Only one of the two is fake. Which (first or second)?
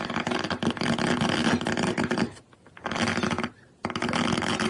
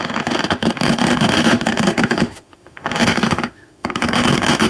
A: second